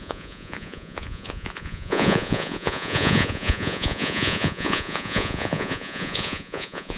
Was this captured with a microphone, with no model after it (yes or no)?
no